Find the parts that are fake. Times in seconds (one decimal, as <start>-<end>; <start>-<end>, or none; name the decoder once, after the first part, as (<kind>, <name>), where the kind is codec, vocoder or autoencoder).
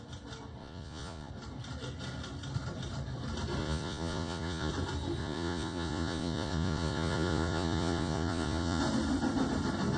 0.6-1.3 (vocoder, Vocos); 3.6-4.7; 5.2-8.8